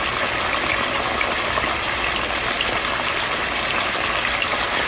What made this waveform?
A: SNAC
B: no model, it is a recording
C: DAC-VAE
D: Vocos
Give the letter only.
B